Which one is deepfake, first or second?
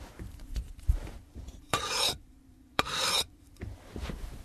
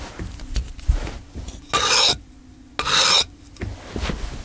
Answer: first